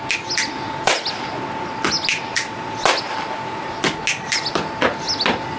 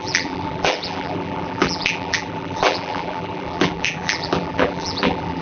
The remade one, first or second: second